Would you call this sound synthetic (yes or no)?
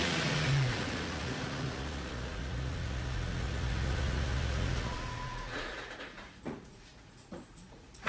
yes